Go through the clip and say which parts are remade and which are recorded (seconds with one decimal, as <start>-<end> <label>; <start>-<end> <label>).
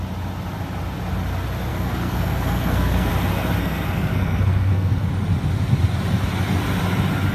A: 0.0-1.7 recorded; 1.7-3.1 remade; 3.1-3.6 recorded; 3.6-5.1 remade; 5.1-7.3 recorded